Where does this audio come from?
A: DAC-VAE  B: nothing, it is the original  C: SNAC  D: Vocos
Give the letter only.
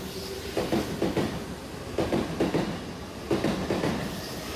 B